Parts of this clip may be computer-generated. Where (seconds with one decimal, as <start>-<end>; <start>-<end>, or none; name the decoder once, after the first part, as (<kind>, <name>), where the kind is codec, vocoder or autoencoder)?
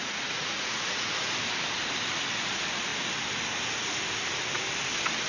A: 0.0-1.2 (vocoder, Vocos)